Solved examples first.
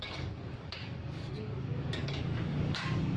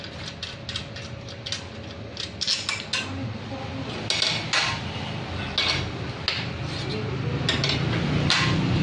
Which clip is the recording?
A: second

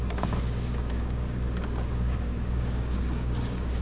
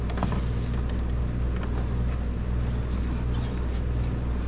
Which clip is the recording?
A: second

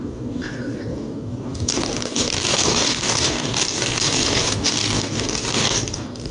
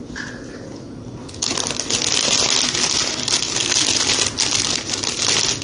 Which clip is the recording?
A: second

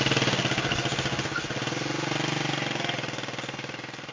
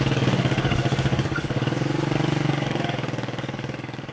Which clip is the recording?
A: first